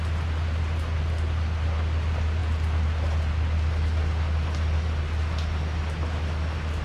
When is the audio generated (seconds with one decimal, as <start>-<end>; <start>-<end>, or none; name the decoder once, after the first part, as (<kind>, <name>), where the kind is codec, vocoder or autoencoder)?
none